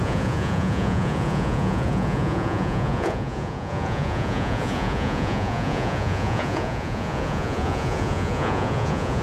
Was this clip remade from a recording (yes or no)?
yes